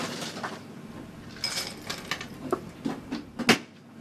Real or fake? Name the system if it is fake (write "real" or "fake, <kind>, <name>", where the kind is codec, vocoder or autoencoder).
real